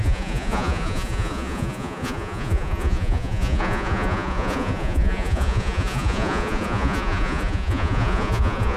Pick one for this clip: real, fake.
fake